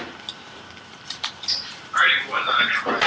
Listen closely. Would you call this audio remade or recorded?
remade